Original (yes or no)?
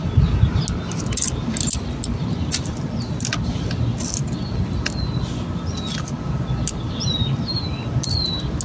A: yes